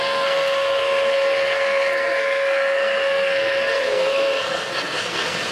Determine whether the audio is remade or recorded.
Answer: remade